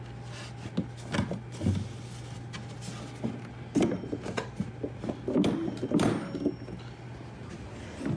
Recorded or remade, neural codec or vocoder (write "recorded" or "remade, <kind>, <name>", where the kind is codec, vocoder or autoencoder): recorded